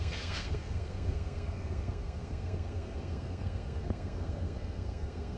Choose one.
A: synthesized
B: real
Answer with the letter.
A